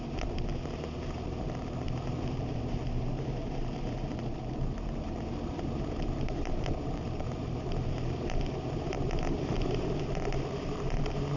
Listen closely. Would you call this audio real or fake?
fake